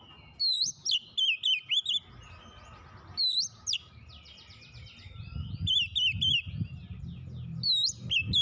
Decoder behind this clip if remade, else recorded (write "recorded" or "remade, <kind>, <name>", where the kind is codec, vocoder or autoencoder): recorded